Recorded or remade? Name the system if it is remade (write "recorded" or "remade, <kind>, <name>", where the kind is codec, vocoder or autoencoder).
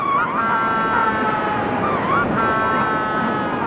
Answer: recorded